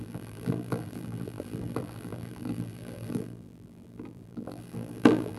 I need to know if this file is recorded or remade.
remade